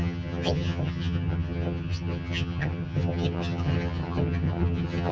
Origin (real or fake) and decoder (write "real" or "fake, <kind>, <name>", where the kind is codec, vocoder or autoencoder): fake, vocoder, HiFi-GAN